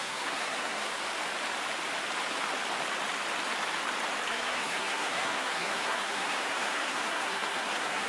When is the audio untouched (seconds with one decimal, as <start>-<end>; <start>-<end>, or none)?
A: 0.9-4.3